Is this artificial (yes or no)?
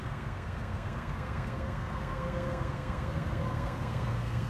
yes